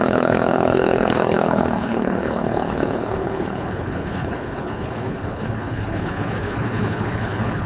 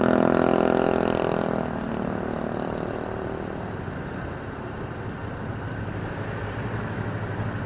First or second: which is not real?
first